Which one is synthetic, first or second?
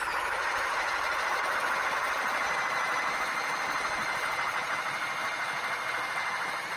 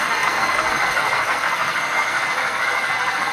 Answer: second